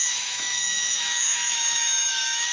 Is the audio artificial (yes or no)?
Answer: yes